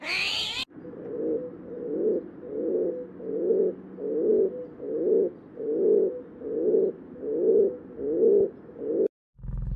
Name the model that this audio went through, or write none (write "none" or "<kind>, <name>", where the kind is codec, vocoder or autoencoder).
none